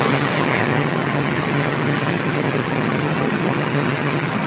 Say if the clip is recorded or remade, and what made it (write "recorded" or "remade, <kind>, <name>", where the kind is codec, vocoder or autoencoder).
remade, vocoder, HiFi-GAN